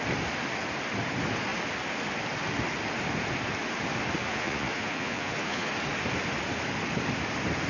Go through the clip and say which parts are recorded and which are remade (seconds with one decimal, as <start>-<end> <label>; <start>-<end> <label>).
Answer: 0.0-4.2 recorded; 4.2-5.7 remade; 5.7-7.7 recorded